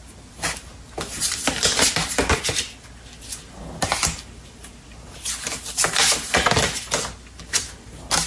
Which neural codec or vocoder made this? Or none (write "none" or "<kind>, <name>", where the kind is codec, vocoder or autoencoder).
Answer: none